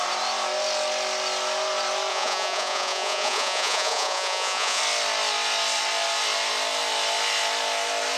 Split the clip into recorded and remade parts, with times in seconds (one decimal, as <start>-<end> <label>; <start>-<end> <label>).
0.0-2.1 recorded; 2.1-4.8 remade; 4.8-8.2 recorded